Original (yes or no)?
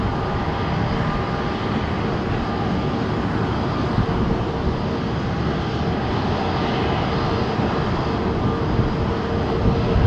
yes